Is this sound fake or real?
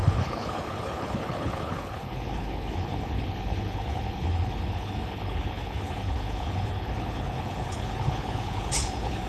fake